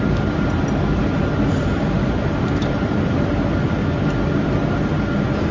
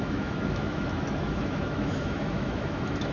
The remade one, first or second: second